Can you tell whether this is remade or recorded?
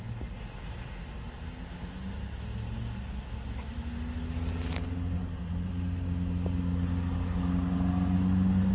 recorded